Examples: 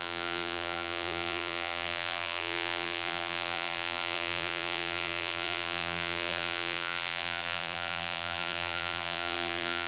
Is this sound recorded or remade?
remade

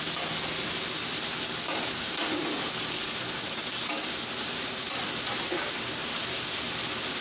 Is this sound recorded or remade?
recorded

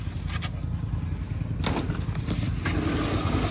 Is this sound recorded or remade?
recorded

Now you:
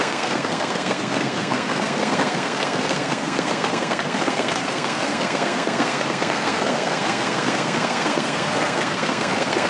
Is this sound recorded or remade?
remade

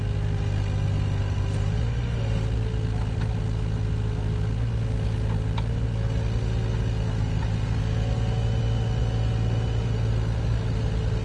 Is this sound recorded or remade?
recorded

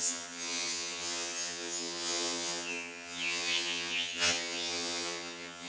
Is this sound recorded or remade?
remade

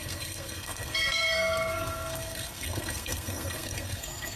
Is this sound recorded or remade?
remade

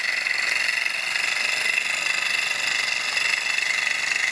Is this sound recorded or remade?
recorded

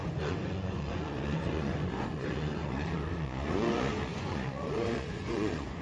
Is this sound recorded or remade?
remade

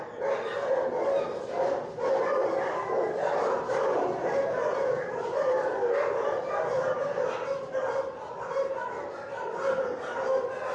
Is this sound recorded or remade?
recorded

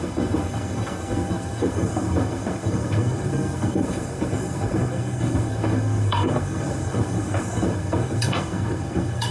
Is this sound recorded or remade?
remade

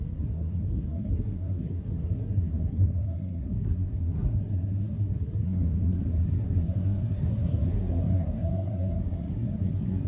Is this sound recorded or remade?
remade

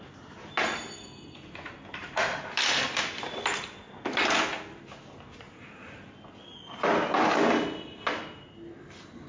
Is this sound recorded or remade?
recorded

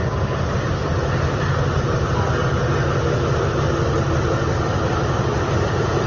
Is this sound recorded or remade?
recorded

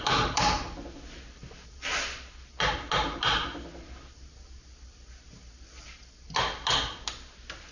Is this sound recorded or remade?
recorded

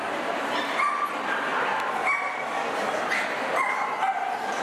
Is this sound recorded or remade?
recorded